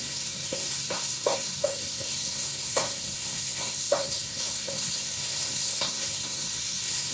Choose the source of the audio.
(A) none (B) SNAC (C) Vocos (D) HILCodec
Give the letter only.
B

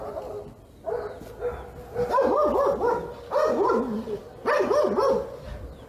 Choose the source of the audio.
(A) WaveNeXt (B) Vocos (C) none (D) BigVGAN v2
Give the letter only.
C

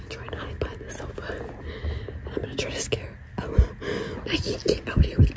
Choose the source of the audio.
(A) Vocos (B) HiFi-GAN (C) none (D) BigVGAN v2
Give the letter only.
C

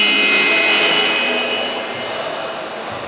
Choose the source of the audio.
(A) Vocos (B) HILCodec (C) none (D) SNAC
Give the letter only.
C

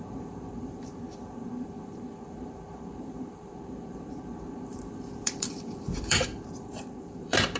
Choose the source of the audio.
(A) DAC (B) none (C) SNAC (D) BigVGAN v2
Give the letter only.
D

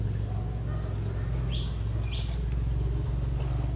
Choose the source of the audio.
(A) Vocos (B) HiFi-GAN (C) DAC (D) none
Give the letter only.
D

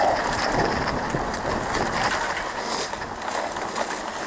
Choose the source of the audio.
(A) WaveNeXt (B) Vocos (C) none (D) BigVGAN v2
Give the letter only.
C